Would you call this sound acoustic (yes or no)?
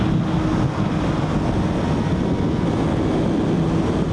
yes